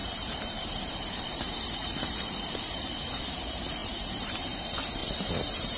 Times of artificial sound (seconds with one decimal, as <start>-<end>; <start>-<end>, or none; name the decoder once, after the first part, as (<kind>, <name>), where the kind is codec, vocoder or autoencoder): 0.0-3.2 (vocoder, BigVGAN v2); 3.8-4.4; 5.0-5.8